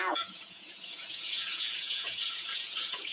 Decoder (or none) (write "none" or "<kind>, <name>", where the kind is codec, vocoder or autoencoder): vocoder, Vocos